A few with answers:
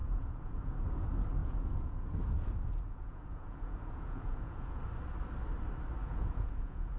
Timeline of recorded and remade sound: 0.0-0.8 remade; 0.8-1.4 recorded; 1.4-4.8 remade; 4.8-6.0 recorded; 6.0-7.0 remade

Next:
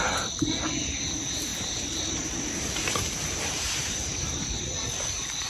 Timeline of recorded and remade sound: 0.0-1.5 recorded; 1.5-4.6 remade; 4.6-5.5 recorded

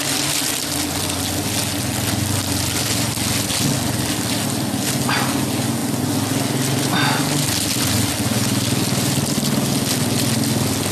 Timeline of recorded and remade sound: 0.0-10.9 recorded

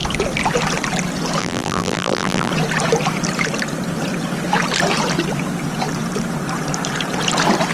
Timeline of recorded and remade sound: 0.0-1.4 recorded; 1.4-2.5 remade; 2.5-7.7 recorded